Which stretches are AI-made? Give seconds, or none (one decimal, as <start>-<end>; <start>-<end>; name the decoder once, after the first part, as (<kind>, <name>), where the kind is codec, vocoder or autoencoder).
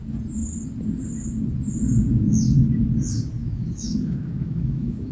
3.4-5.1 (autoencoder, DAC-VAE)